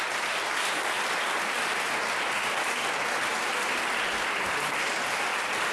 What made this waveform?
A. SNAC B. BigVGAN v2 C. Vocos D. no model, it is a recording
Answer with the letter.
D